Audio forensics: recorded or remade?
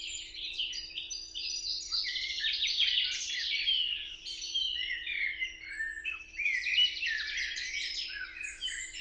recorded